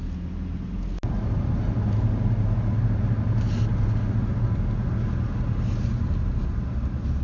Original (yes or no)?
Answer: yes